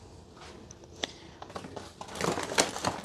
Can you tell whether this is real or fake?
real